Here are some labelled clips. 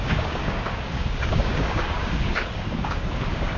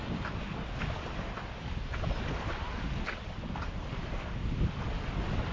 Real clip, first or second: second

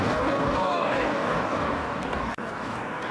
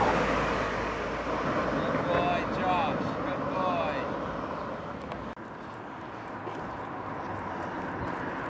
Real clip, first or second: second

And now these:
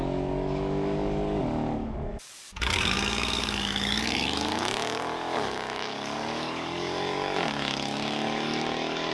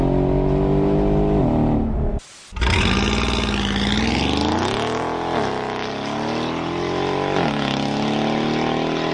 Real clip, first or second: second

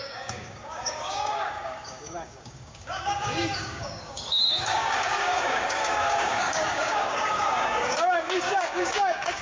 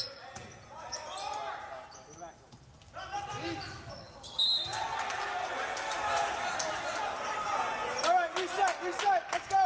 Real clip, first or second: second